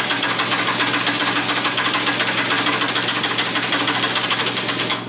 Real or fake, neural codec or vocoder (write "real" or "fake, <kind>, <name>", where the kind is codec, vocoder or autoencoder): real